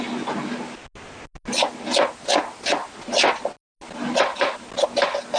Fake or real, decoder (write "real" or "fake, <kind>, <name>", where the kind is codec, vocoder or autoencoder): real